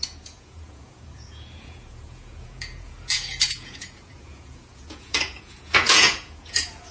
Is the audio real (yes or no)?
no